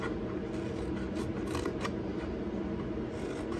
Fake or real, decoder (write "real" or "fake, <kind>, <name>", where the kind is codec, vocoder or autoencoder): real